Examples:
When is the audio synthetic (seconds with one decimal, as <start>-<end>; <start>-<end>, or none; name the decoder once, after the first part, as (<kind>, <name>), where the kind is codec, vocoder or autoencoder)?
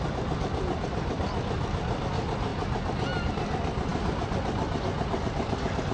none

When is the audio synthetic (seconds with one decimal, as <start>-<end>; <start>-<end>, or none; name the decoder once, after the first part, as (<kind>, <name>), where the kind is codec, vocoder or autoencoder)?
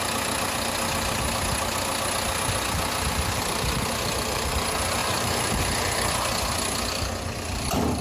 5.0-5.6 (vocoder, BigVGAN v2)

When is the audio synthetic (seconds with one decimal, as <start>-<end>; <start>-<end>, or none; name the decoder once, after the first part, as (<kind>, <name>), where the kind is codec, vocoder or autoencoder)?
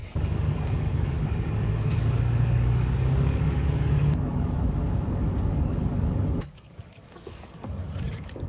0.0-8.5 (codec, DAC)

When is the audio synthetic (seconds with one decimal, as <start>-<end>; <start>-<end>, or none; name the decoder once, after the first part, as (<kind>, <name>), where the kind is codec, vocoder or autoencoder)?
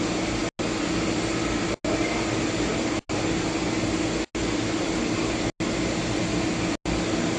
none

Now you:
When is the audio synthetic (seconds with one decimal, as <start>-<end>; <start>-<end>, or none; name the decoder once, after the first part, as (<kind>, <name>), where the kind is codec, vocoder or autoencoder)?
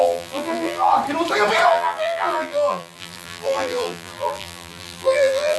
0.0-0.9 (vocoder, BigVGAN v2); 1.7-5.6